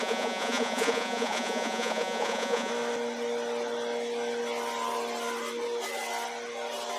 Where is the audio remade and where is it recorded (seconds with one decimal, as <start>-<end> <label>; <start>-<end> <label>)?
0.0-2.7 remade; 2.7-7.0 recorded